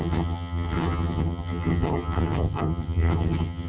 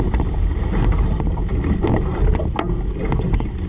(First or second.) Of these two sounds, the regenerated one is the first